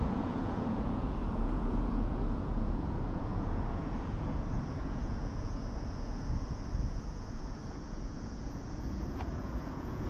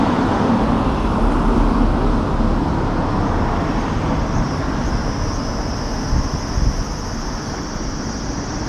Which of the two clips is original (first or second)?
second